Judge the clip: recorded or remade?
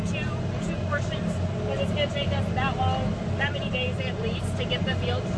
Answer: recorded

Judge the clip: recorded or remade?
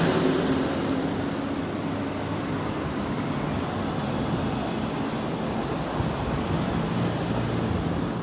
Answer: recorded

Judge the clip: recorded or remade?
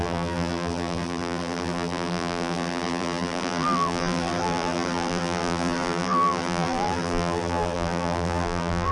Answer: remade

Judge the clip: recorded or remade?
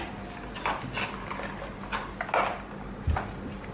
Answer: recorded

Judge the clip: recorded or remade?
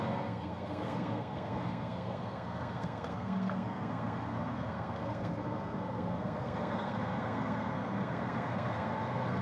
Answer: remade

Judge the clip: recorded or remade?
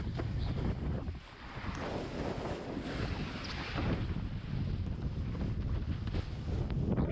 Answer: recorded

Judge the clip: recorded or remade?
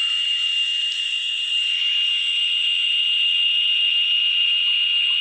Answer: recorded